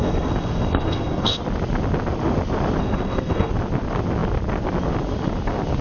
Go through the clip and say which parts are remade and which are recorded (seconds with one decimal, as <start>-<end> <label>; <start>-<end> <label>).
0.0-1.4 remade; 1.4-2.8 recorded; 2.8-3.5 remade; 3.5-5.8 recorded